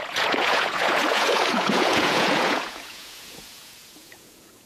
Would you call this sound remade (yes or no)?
yes